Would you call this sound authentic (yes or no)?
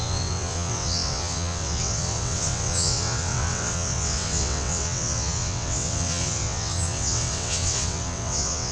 no